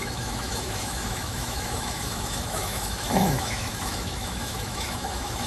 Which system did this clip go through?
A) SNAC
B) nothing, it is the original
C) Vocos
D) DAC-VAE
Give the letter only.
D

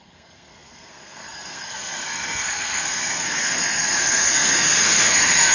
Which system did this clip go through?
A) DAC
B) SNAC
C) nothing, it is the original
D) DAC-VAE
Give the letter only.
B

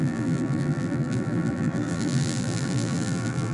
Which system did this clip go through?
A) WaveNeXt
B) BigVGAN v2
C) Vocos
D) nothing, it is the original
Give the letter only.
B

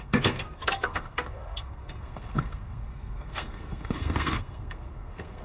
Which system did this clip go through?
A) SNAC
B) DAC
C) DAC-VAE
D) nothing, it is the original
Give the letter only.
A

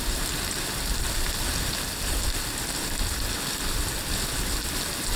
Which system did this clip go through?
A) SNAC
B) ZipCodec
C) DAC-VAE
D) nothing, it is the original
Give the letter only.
D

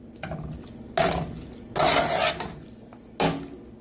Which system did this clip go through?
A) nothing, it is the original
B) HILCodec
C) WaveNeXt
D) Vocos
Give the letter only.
A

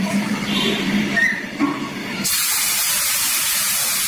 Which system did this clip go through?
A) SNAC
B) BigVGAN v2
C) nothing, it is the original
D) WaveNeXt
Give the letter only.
B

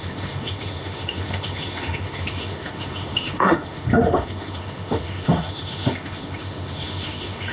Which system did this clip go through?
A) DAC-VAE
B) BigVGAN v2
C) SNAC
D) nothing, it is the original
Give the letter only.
A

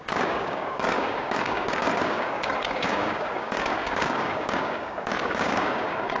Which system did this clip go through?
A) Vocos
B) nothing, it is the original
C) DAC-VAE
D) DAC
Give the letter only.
D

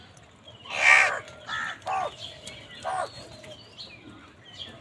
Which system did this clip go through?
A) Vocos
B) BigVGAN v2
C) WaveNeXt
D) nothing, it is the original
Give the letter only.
D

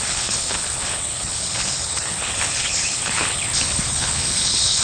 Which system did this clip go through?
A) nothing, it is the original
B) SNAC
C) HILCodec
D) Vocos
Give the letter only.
C